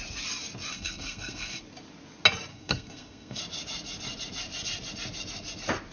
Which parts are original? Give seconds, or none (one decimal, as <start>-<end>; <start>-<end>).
0.0-0.7; 1.6-2.5; 3.4-5.9